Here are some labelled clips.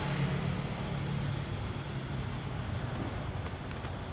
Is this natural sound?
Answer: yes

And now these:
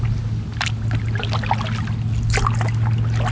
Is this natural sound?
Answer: yes